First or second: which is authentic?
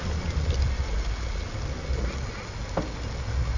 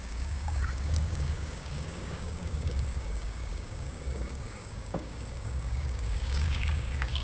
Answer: first